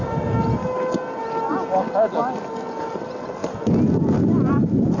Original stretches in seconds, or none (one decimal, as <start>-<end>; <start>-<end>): 0.0-5.0